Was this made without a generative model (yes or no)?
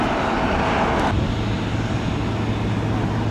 yes